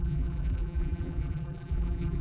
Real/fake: fake